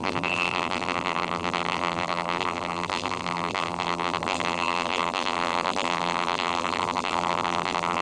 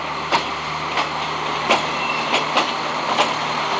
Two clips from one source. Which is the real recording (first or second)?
second